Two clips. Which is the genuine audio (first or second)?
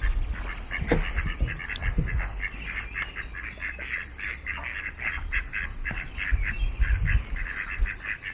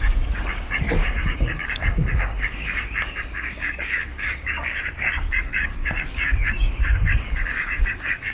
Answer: first